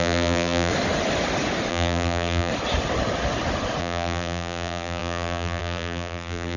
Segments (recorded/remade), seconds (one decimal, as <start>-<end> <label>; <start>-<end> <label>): 0.0-0.7 remade; 0.7-1.7 recorded; 1.7-2.5 remade; 2.5-3.8 recorded; 3.8-6.6 remade